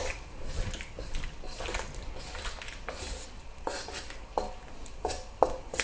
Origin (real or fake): real